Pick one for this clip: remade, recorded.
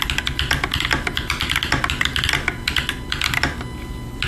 recorded